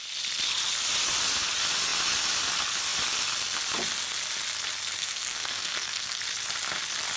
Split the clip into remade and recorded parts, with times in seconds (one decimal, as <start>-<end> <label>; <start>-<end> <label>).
0.0-5.0 recorded; 5.0-6.2 remade; 6.2-7.2 recorded